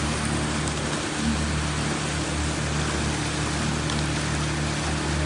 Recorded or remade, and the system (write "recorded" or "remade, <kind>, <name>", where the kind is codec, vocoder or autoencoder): recorded